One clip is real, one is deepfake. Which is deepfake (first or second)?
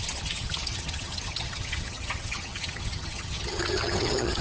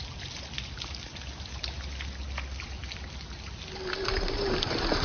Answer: first